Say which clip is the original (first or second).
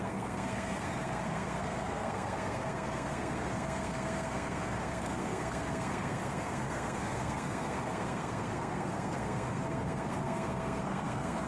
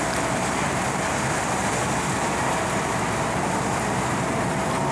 second